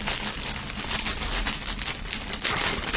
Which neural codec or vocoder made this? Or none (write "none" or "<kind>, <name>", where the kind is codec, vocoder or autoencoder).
none